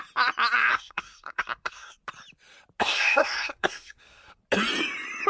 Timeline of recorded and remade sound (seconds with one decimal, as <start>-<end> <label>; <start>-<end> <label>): 0.0-0.7 recorded; 0.7-2.0 remade; 2.0-2.8 recorded; 2.8-4.4 remade; 4.4-5.3 recorded

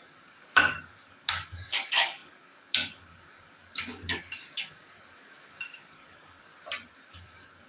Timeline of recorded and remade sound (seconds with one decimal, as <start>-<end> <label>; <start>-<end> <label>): 0.0-6.5 remade; 6.5-7.1 recorded; 7.1-7.7 remade

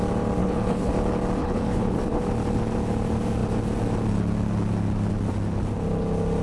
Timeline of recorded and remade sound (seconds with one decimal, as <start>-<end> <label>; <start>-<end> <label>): 0.0-0.4 recorded; 0.4-0.9 remade; 0.9-1.4 recorded; 1.4-2.2 remade; 2.2-6.4 recorded

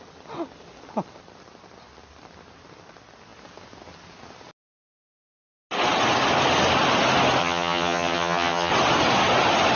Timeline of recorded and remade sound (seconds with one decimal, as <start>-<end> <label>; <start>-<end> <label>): 0.0-7.4 recorded; 7.4-8.7 remade; 8.7-9.8 recorded

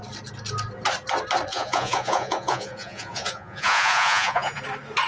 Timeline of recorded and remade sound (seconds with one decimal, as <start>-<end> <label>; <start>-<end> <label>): 0.0-1.5 recorded; 1.5-4.6 remade; 4.6-5.1 recorded

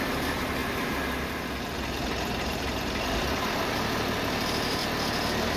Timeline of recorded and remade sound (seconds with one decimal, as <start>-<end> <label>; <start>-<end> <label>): 0.0-4.8 remade; 4.8-5.6 recorded

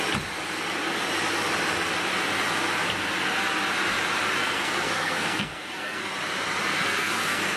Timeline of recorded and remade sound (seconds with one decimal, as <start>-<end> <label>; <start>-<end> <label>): 0.0-4.4 recorded; 4.4-6.1 remade; 6.1-6.7 recorded; 6.7-7.6 remade